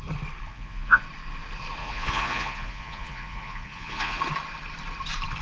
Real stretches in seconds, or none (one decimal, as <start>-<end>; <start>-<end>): 0.0-0.5; 1.0-1.8; 4.2-5.4